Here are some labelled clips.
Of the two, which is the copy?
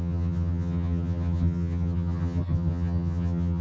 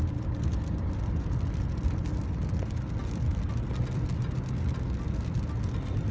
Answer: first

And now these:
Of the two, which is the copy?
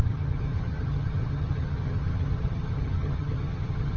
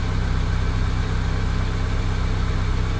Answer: first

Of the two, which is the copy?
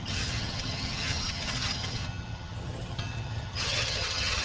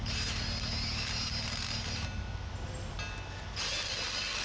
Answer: first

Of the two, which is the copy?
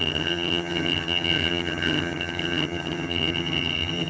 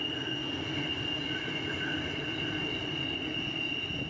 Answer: first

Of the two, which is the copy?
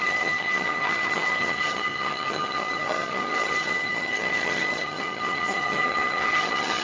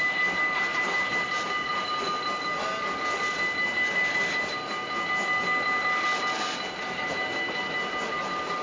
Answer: first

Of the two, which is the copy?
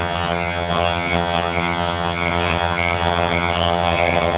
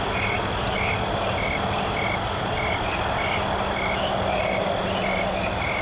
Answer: first